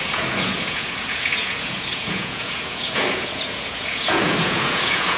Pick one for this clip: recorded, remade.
remade